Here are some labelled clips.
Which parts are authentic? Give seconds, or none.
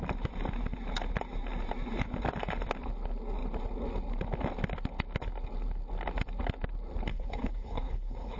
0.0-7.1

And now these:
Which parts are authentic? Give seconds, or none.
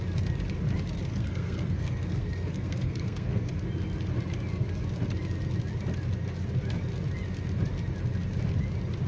0.0-1.1; 3.5-9.1